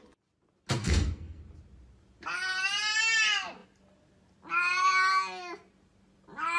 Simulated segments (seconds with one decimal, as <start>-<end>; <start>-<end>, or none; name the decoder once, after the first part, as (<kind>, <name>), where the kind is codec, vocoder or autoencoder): 0.8-1.4 (codec, SNAC)